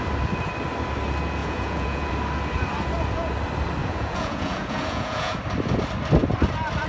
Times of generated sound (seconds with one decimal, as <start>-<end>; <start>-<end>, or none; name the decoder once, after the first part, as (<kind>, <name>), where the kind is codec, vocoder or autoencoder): 1.4-2.1 (vocoder, Vocos); 3.8-5.4